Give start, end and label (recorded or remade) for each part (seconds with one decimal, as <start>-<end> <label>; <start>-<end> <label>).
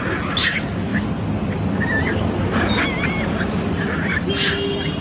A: 0.0-5.0 recorded